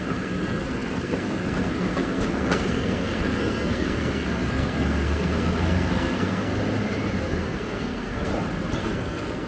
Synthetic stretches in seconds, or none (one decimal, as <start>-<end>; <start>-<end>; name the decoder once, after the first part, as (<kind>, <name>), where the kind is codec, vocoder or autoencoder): 0.0-6.5 (codec, SNAC); 7.2-8.3; 8.8-9.5